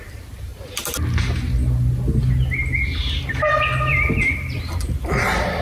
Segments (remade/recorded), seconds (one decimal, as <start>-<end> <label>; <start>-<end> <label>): 0.0-3.9 recorded; 3.9-5.6 remade